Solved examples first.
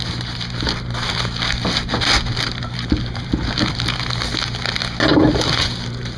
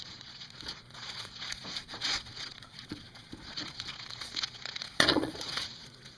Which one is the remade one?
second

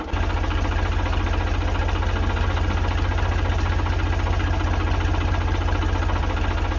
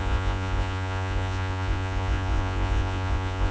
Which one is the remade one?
second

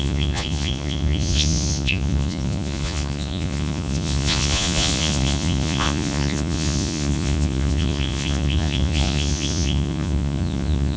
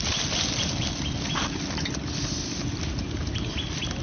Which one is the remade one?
first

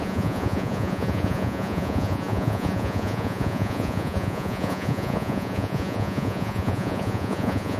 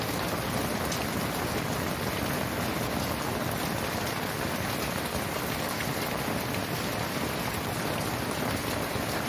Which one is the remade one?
first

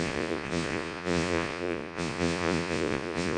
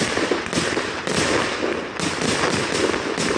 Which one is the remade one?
first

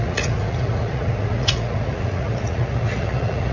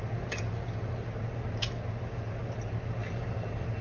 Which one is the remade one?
first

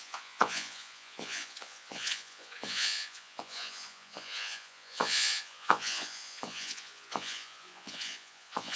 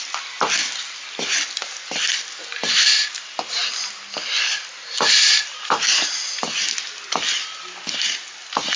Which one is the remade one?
first